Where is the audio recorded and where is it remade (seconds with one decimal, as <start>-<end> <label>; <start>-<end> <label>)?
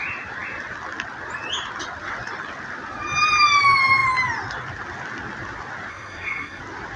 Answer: 0.0-5.9 recorded; 5.9-6.6 remade; 6.6-7.0 recorded